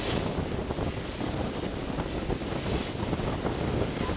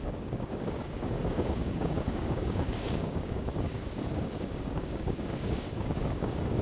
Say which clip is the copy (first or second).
second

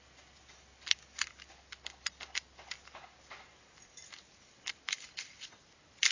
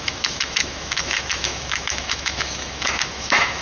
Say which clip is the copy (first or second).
second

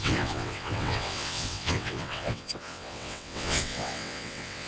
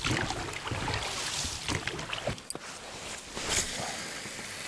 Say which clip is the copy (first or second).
first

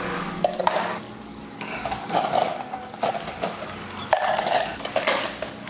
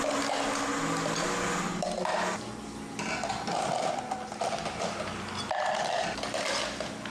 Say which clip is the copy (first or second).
first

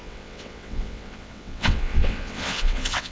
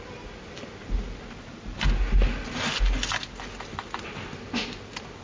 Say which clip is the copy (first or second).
first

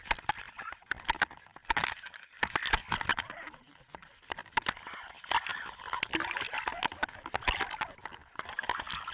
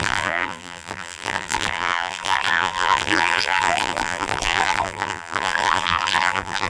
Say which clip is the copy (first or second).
second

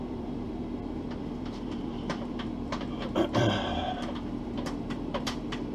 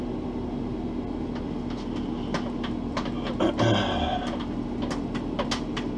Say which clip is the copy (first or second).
first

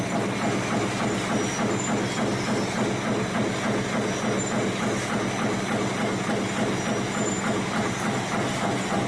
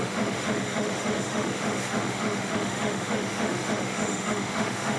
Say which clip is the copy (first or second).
second